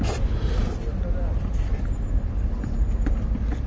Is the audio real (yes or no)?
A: yes